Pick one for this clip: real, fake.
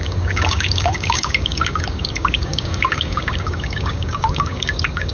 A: fake